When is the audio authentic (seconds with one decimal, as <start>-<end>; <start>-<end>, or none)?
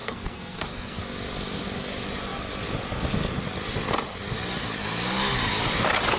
1.0-6.2